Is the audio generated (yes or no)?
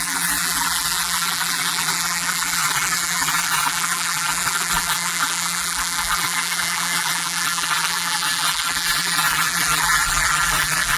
yes